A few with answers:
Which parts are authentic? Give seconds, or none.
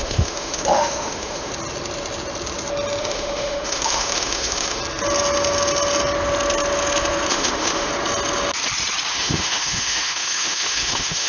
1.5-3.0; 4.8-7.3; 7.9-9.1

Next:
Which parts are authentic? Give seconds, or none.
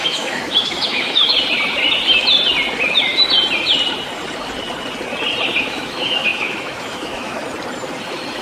1.3-5.6; 7.4-8.4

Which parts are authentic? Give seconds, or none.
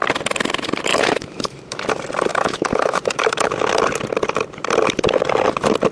0.0-0.9; 1.8-2.3; 3.5-5.9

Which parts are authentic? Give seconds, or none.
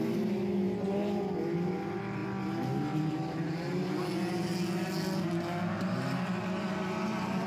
0.0-7.5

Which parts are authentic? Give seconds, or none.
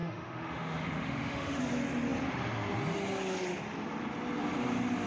1.6-5.1